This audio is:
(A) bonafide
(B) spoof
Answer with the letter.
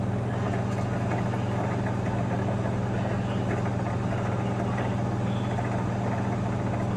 A